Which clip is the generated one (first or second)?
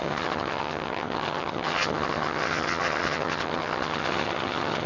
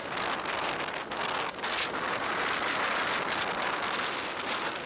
first